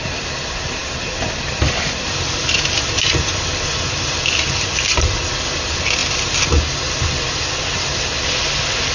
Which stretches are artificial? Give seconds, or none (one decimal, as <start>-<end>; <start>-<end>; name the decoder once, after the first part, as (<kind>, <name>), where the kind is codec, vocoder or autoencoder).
none